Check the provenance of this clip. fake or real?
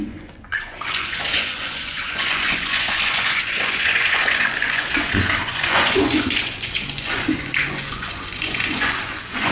fake